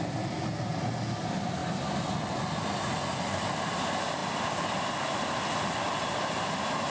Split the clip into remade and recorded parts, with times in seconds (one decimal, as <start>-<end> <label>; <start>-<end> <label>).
0.0-6.9 recorded